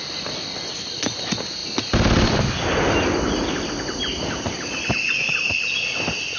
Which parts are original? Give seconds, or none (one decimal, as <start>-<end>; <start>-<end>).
0.0-6.4